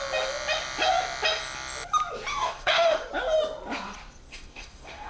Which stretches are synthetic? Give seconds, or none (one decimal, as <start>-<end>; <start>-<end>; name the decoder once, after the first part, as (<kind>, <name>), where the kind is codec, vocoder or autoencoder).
2.3-3.1 (codec, DAC); 4.3-5.1